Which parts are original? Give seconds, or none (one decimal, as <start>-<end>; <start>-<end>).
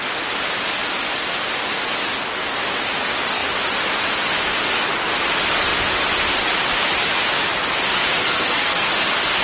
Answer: 0.0-8.2; 8.9-9.4